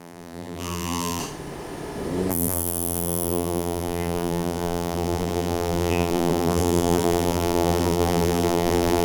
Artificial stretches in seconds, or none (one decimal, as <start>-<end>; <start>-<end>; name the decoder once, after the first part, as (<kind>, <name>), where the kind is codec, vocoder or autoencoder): 0.0-1.2 (vocoder, BigVGAN v2); 2.3-9.0